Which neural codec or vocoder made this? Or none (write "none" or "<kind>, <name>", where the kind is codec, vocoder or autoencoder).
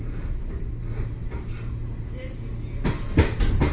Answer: none